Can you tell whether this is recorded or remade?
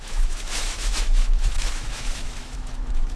remade